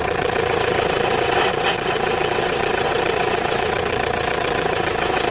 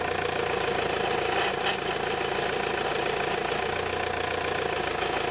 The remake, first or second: first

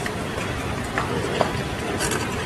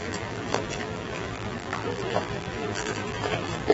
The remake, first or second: second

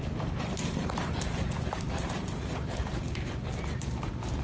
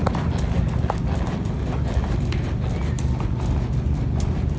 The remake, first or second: first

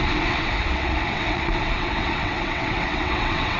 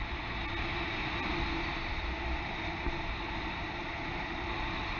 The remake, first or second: first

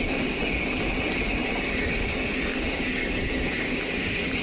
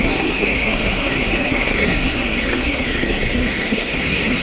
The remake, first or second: second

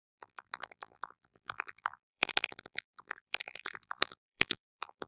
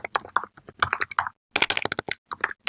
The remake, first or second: first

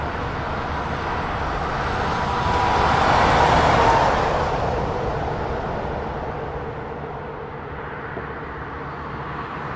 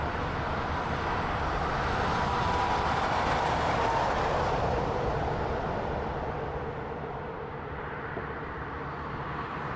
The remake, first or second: second